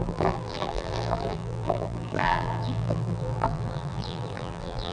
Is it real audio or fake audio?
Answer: fake